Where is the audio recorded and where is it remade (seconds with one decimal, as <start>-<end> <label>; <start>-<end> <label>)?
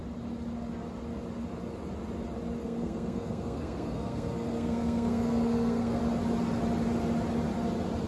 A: 0.0-2.6 recorded; 2.6-6.0 remade; 6.0-8.1 recorded